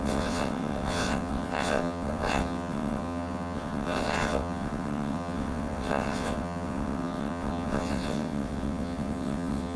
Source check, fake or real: fake